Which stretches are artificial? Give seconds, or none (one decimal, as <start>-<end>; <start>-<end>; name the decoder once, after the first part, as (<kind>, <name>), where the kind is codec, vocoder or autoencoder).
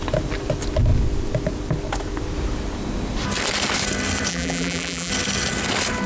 4.3-5.1 (vocoder, BigVGAN v2)